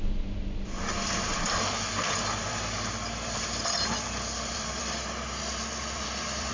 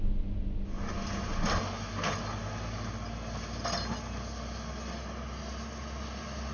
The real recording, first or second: second